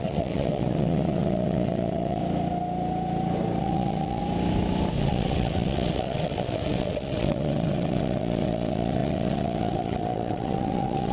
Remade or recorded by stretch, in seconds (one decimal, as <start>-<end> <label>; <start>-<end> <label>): 0.0-2.2 remade; 2.2-3.6 recorded; 3.6-4.2 remade; 4.2-5.0 recorded; 5.0-11.1 remade